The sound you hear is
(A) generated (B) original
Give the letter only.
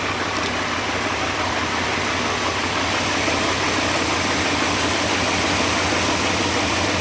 B